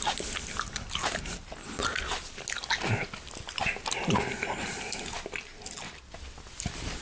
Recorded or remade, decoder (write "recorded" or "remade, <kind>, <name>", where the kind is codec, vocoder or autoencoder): recorded